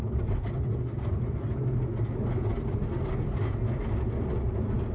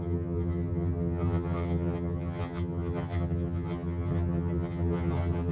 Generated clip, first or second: second